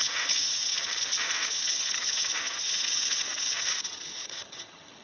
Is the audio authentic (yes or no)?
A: no